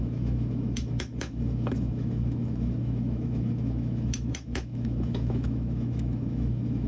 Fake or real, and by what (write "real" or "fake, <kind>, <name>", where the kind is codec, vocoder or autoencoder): fake, autoencoder, DAC-VAE